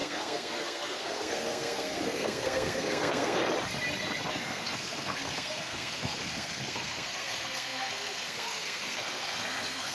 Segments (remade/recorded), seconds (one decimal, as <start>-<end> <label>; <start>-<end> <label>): 0.0-3.4 remade; 3.4-4.3 recorded; 4.3-9.9 remade